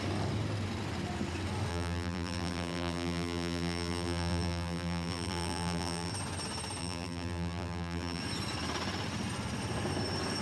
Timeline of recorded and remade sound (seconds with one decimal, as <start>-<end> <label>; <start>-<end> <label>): 0.0-1.7 recorded; 1.7-6.1 remade; 6.1-6.8 recorded; 6.8-8.2 remade; 8.2-10.4 recorded